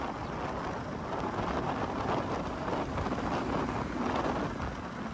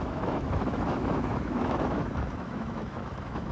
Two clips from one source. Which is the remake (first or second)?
second